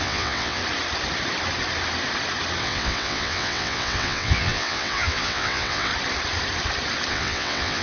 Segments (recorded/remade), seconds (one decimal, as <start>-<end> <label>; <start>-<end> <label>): 0.0-0.6 remade; 0.6-2.6 recorded; 2.6-5.9 remade; 5.9-7.1 recorded; 7.1-7.8 remade

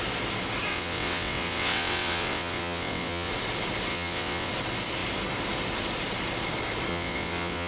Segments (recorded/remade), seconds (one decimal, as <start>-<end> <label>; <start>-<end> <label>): 0.0-0.7 recorded; 0.7-3.3 remade; 3.3-3.9 recorded; 3.9-4.5 remade; 4.5-6.9 recorded; 6.9-7.7 remade

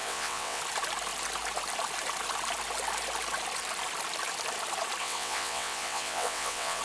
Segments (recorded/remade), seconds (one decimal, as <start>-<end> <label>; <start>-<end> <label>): 0.0-0.6 remade; 0.6-5.0 recorded; 5.0-6.8 remade

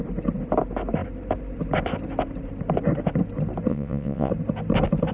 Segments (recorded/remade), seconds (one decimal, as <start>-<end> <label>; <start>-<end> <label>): 0.0-3.7 recorded; 3.7-4.3 remade; 4.3-5.1 recorded